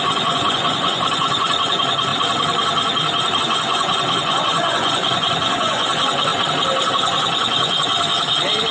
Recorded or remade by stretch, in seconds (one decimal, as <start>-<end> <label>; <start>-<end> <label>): 0.0-2.1 remade; 2.1-3.4 recorded; 3.4-6.3 remade; 6.3-6.9 recorded; 6.9-7.9 remade; 7.9-8.7 recorded